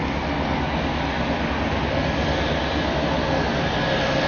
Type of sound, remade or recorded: recorded